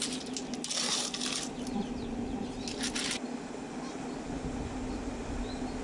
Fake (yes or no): no